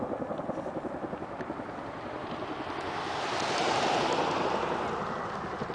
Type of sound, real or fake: real